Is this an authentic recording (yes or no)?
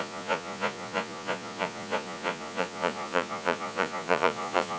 no